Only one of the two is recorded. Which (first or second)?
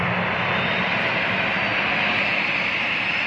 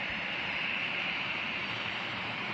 first